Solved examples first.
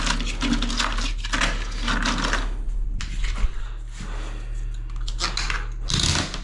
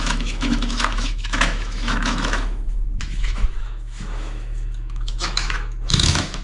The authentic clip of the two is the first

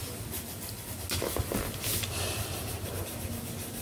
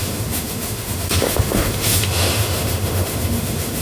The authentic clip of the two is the first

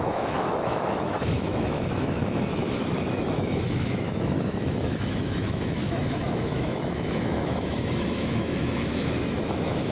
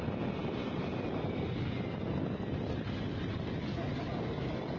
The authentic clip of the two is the second